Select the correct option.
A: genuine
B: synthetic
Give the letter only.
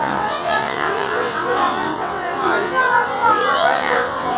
B